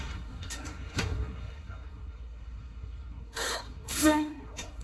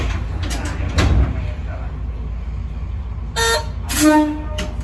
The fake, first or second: first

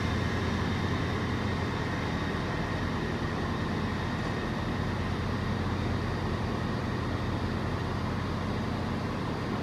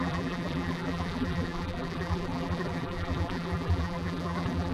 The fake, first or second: second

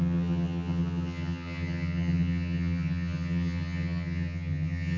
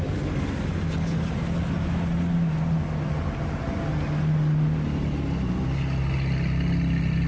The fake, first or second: first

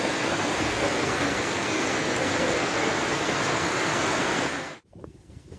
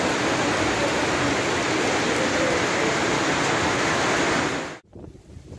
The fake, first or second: first